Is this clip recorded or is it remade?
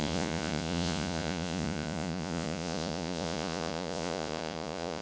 remade